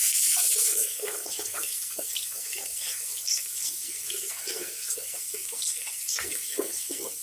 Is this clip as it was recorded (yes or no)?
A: no